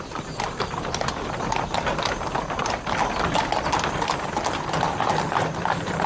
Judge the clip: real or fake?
real